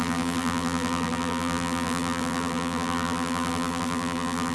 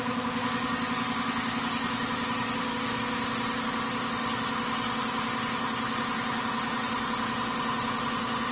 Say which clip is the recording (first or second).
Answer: second